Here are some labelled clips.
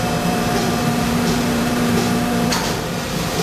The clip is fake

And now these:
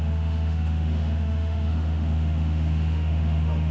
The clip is fake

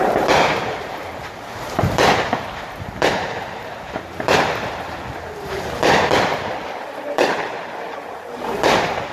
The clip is fake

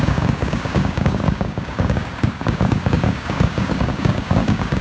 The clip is fake